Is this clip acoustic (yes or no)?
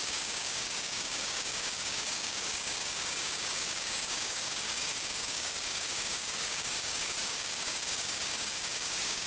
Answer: no